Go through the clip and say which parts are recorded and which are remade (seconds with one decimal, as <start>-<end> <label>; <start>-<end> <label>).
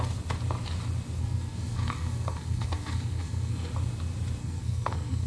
0.0-1.2 recorded; 1.2-3.7 remade; 3.7-4.4 recorded; 4.4-5.3 remade